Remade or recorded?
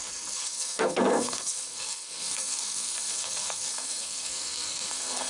remade